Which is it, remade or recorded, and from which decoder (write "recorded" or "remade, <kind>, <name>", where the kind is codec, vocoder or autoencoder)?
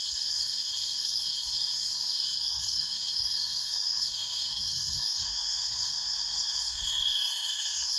remade, codec, SNAC